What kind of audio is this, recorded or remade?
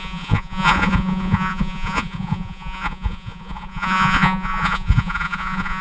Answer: remade